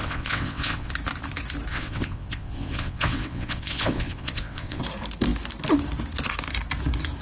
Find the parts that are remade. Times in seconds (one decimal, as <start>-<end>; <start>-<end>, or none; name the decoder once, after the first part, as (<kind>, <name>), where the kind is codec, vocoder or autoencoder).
0.0-0.9 (vocoder, WaveNeXt); 1.7-4.8